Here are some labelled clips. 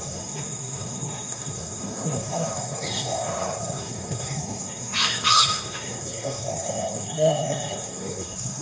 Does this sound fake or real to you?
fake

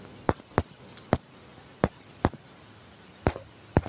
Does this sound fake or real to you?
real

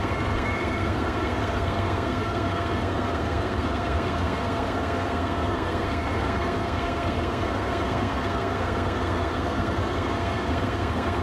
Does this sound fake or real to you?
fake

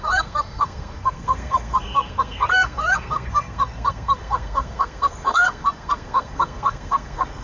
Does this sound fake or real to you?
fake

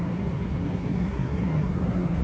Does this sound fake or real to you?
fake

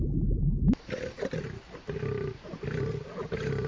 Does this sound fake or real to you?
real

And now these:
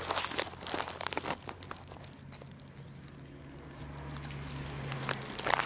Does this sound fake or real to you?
real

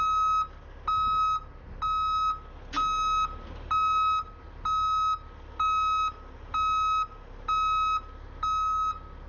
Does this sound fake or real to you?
real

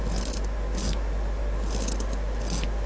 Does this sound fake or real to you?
real